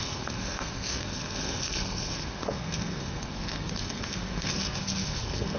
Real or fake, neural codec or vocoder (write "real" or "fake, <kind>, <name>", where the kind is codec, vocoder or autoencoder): fake, codec, SNAC